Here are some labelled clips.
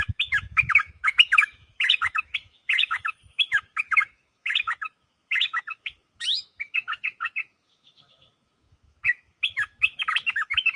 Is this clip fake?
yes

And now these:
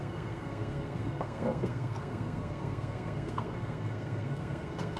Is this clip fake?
yes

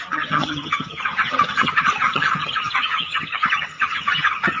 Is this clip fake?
yes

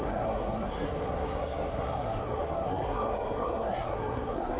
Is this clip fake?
yes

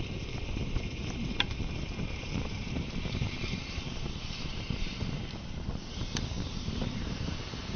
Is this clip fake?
yes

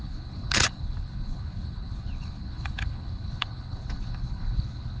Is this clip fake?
yes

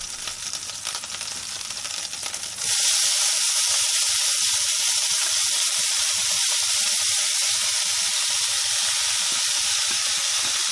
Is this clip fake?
no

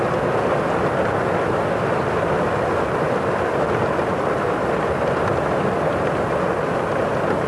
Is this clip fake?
no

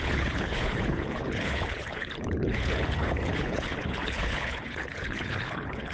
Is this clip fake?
yes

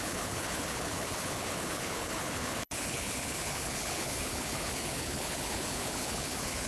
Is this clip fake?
yes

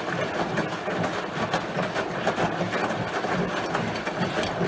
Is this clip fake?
no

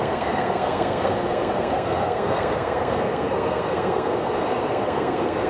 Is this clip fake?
yes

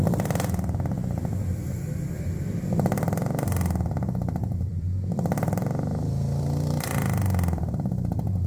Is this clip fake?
yes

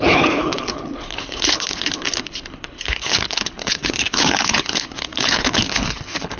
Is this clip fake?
yes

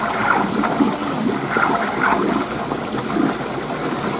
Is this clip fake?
no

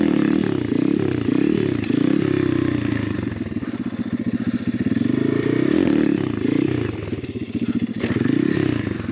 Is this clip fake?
no